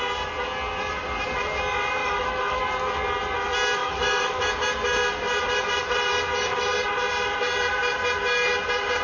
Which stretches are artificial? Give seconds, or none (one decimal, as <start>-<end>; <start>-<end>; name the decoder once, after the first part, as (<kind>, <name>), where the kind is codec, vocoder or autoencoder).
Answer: 2.0-2.6 (autoencoder, DAC-VAE); 3.8-4.4